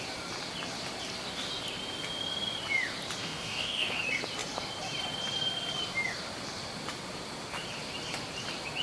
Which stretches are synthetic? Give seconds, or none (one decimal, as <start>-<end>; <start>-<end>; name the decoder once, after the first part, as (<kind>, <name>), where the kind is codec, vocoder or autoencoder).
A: 3.2-4.0 (codec, DAC)